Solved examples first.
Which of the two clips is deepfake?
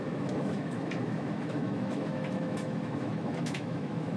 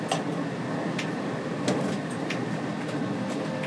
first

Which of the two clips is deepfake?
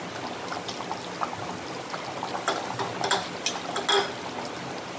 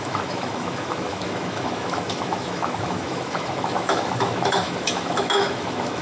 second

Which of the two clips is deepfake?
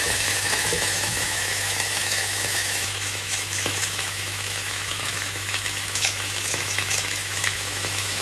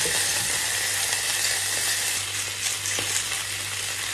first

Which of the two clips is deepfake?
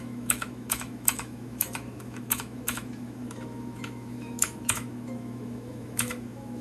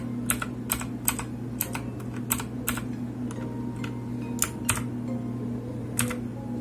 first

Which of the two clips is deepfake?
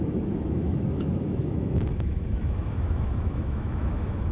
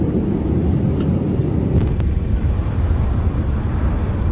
first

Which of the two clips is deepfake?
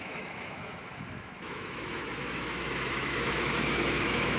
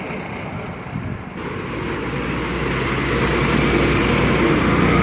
first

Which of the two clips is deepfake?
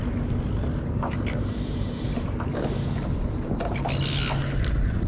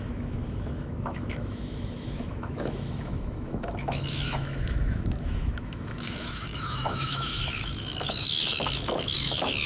second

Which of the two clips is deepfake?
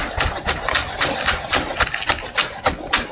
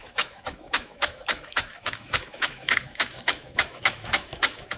second